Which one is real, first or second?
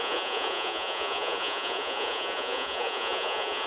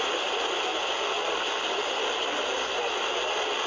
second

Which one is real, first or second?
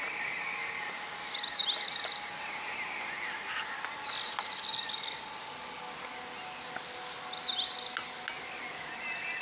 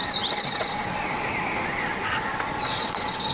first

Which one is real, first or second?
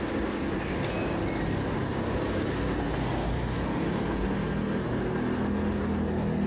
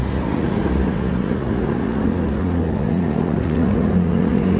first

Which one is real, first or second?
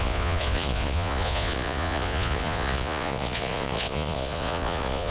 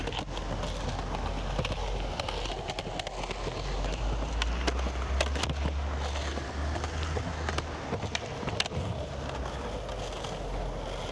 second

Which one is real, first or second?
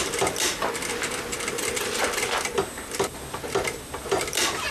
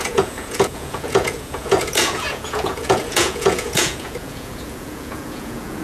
first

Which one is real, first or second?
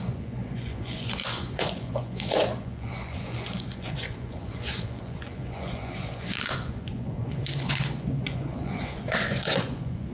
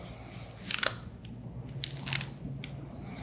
second